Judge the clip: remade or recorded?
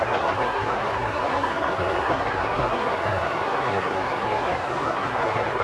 remade